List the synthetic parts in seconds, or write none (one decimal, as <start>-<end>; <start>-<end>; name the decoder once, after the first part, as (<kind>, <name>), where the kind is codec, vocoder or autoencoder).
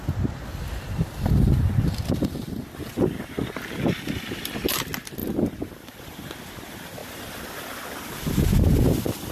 0.5-2.9 (vocoder, BigVGAN v2); 5.2-6.3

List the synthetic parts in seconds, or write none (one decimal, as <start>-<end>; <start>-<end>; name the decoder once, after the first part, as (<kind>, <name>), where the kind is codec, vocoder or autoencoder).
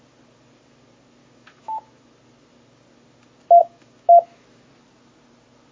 1.2-2.1 (autoencoder, DAC-VAE); 3.6-4.7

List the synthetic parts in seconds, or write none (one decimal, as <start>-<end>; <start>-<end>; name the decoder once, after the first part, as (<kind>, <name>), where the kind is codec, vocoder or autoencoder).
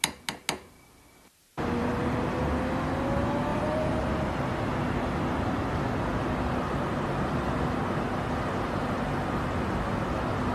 3.5-4.1 (vocoder, BigVGAN v2)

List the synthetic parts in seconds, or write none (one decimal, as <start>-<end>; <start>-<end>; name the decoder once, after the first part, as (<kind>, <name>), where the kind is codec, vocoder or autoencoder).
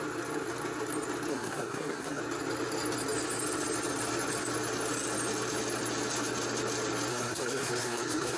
1.3-2.2 (codec, SNAC); 7.1-8.4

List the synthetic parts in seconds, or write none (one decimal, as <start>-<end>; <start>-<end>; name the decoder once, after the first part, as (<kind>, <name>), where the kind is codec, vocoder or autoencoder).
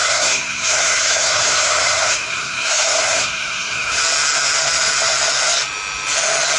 0.0-4.0 (codec, SNAC)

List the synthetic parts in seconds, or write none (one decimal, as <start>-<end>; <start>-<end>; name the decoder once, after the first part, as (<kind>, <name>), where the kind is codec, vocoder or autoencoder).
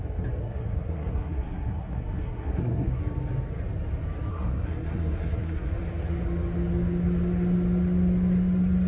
0.4-3.0 (codec, SNAC); 4.3-5.7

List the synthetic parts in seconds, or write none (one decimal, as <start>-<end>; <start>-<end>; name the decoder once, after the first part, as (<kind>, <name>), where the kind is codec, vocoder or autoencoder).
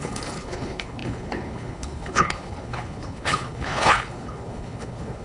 0.0-5.2 (codec, HILCodec)